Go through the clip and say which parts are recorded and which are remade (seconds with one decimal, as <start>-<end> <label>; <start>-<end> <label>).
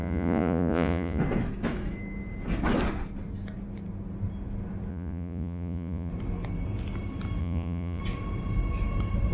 0.0-1.2 remade; 1.2-4.9 recorded; 4.9-6.1 remade; 6.1-7.4 recorded; 7.4-8.0 remade; 8.0-9.3 recorded